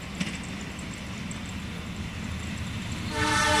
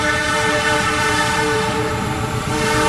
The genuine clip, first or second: first